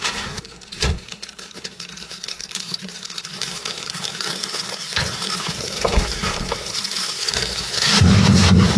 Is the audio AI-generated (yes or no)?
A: yes